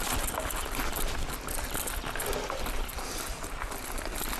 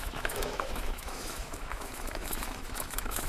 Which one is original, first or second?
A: first